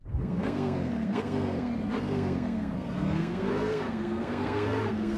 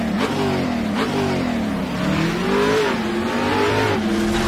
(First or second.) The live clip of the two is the second